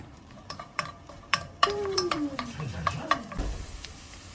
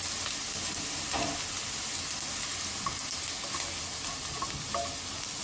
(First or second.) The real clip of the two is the second